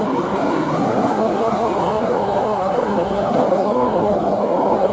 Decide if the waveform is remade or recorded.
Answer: remade